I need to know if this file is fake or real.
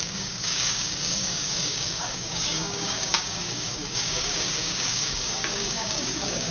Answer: fake